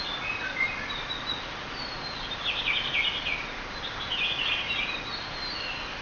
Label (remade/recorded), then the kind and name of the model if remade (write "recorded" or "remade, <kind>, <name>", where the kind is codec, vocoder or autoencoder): recorded